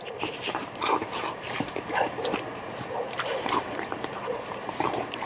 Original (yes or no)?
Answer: no